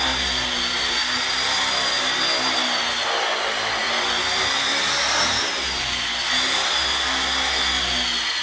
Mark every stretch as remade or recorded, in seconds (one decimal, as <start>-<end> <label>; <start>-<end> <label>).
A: 0.0-8.4 recorded